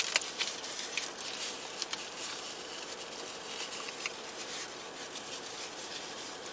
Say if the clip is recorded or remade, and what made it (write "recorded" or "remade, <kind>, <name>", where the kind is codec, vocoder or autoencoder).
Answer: recorded